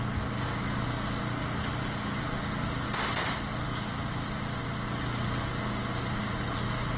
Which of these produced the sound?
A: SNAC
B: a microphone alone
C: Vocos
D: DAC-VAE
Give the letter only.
B